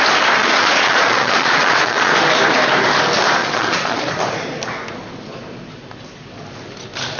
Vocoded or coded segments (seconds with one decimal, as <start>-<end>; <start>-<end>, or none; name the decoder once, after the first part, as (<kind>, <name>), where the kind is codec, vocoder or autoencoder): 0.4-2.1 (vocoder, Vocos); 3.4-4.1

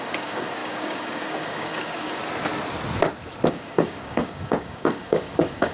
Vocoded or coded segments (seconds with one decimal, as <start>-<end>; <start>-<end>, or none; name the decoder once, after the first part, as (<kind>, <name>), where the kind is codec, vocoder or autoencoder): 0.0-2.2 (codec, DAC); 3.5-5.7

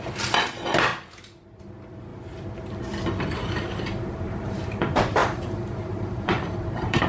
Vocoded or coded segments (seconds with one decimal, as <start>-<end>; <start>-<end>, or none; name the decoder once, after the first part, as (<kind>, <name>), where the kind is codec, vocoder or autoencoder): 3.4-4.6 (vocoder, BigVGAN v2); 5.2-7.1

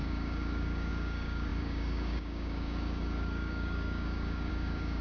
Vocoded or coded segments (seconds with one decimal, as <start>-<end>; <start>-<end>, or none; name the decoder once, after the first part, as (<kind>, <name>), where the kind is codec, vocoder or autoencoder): 0.0-5.0 (codec, DAC)

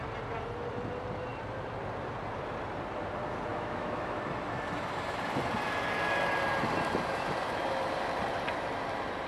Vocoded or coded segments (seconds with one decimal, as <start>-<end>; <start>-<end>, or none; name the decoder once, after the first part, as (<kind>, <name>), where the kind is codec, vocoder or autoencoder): 3.5-4.2 (autoencoder, DAC-VAE)